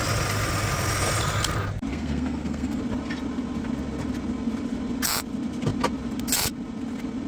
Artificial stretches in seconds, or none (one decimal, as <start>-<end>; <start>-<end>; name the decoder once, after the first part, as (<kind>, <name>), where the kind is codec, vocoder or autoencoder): 1.9-2.8 (codec, SNAC)